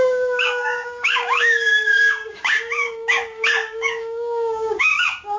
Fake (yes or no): yes